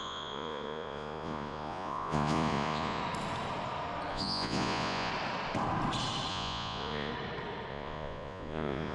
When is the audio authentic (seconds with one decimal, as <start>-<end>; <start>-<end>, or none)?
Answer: 3.0-4.1; 5.1-6.3; 7.1-7.7